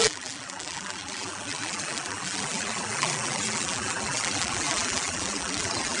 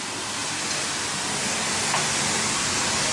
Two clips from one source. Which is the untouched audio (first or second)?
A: second